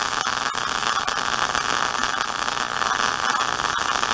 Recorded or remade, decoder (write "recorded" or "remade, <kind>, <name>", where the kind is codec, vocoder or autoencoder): recorded